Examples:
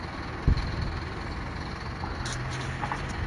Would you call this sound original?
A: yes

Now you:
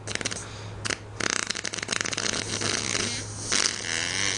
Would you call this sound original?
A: yes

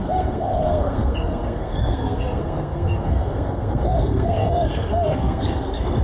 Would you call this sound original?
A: no